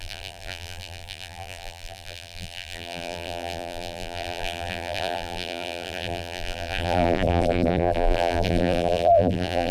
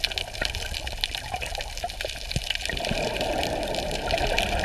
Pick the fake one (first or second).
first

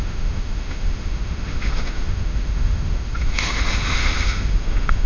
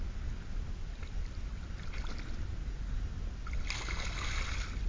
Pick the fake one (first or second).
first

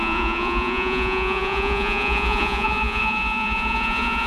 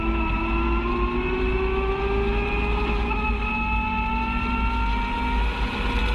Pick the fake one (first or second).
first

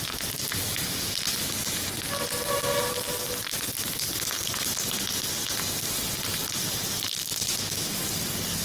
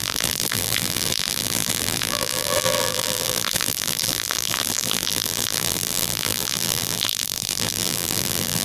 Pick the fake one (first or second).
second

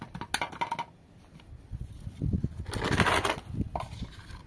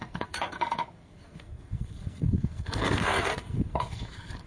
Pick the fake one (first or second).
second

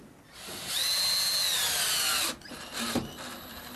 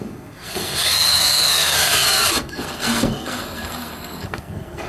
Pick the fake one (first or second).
second